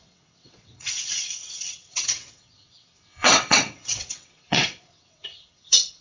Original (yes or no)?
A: no